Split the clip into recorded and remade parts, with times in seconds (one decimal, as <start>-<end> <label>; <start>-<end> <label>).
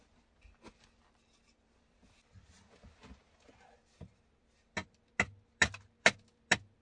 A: 0.0-6.8 recorded